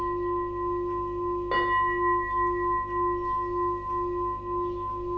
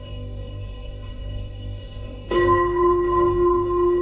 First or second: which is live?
first